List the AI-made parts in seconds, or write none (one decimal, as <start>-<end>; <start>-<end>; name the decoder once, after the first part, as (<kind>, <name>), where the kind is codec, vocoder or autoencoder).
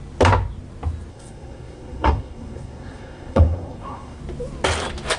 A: 1.1-4.2 (codec, SNAC)